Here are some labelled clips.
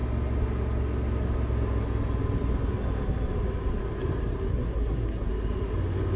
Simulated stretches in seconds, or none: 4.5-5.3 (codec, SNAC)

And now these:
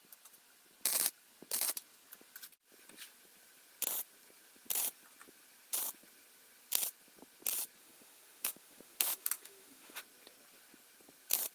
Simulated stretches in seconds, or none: 7.8-10.0 (autoencoder, DAC-VAE)

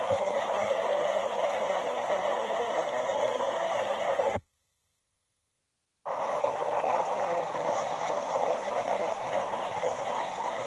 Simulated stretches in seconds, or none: 0.0-5.6 (codec, SNAC); 6.4-10.7

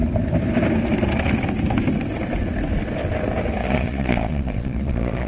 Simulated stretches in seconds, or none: 3.6-5.3 (vocoder, Vocos)

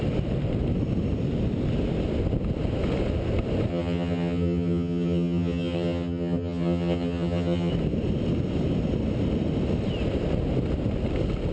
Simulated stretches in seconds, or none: 3.7-7.7 (vocoder, HiFi-GAN)

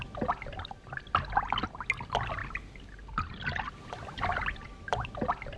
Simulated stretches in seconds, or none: none